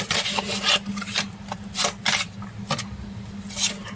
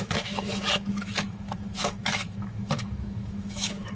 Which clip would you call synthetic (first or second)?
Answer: second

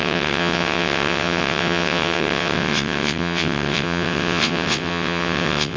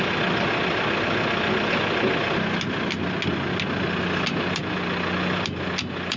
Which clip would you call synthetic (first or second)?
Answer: first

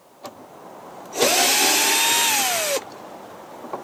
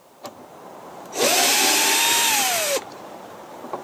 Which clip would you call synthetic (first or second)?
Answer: second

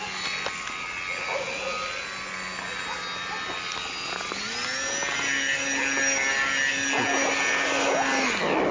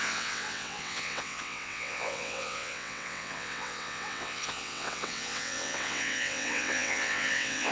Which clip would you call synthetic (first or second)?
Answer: second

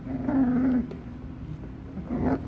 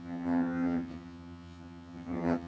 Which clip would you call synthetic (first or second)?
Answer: second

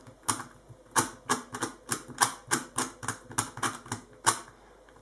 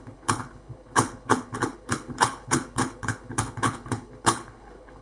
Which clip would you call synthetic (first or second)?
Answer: second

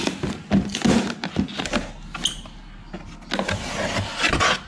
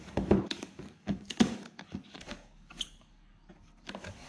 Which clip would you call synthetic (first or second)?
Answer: second